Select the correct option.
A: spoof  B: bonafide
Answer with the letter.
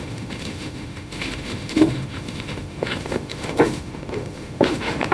A